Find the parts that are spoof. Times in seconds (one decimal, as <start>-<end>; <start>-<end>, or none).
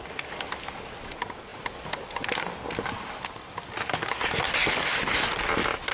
none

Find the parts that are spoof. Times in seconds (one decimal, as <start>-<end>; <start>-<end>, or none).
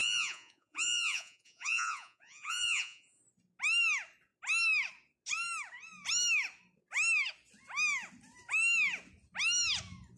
0.0-3.2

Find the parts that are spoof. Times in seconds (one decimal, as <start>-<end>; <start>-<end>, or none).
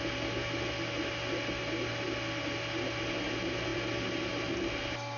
3.7-4.3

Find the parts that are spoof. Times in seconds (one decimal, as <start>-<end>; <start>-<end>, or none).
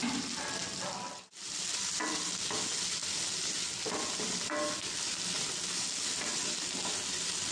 none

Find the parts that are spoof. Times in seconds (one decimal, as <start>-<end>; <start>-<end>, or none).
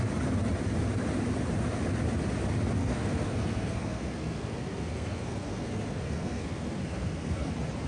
2.8-7.5